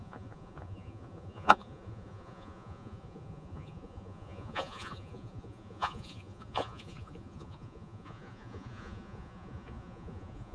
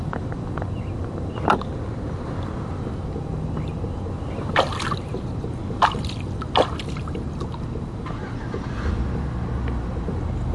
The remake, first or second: first